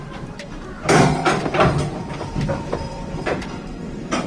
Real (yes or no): no